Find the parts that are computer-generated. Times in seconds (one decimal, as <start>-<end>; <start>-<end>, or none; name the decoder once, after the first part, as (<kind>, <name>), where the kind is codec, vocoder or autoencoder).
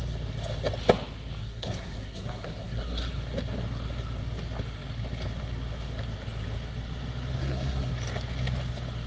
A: 1.4-3.1 (codec, SNAC); 7.4-7.9